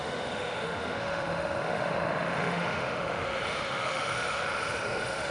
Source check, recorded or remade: remade